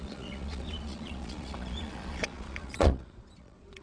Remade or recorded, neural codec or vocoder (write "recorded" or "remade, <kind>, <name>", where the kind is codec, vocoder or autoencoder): remade, vocoder, Vocos